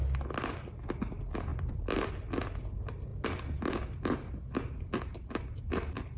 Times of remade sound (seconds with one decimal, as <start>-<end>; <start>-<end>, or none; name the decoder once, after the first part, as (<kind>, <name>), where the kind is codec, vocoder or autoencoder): 1.5-2.1 (vocoder, BigVGAN v2)